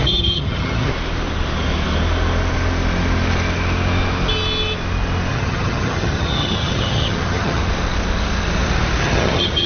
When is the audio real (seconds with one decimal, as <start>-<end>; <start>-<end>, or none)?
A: 0.9-5.3; 7.6-9.0